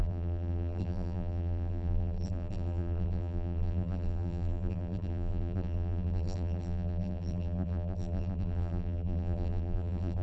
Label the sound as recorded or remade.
remade